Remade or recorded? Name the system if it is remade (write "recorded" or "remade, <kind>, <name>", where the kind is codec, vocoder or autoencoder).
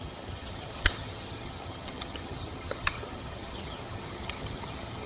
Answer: remade, vocoder, HiFi-GAN